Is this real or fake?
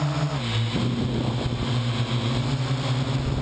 real